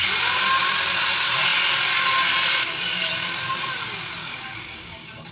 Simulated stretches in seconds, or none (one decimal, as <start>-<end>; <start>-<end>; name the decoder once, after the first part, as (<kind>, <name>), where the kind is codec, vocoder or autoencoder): 2.6-3.1 (codec, DAC); 4.2-5.3